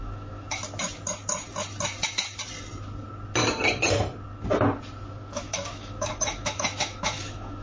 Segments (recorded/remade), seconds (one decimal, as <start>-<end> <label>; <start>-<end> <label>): 0.0-0.6 remade; 0.6-5.1 recorded; 5.1-7.6 remade